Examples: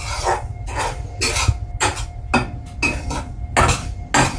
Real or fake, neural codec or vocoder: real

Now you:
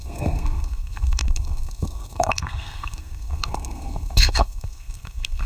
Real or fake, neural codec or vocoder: fake, codec, SNAC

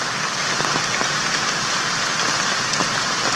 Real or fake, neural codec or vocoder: real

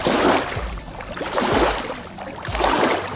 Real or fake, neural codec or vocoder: real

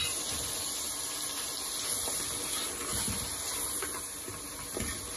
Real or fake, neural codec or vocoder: real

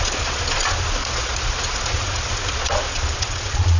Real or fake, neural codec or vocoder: fake, vocoder, Vocos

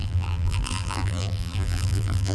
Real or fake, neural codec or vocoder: fake, vocoder, BigVGAN v2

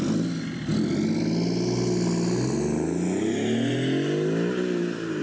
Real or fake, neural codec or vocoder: real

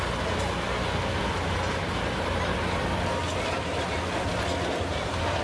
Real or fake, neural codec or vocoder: real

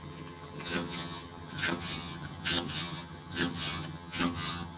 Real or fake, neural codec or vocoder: fake, vocoder, HiFi-GAN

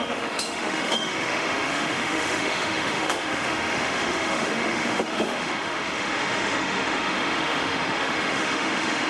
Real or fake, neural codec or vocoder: fake, autoencoder, DAC-VAE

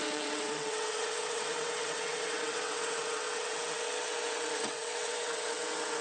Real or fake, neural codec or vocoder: fake, vocoder, WaveNeXt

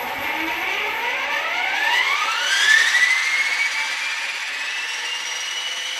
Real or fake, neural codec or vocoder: real